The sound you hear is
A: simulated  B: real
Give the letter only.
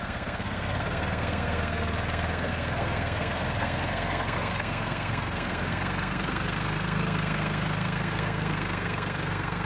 A